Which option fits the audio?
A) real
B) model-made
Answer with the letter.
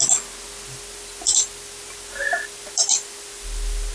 A